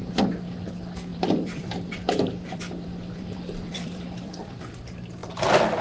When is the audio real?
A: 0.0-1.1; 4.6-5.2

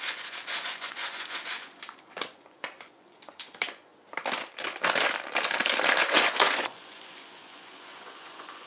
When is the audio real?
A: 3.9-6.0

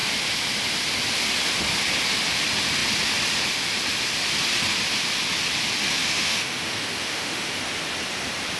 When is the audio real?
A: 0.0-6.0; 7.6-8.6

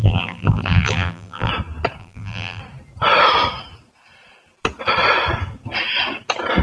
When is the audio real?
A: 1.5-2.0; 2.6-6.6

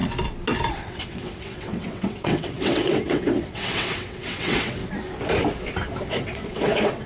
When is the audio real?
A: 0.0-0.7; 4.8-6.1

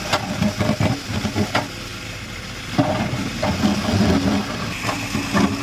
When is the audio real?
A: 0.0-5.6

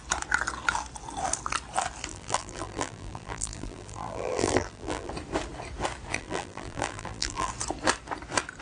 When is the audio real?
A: 0.0-2.1; 5.1-6.1; 7.5-8.6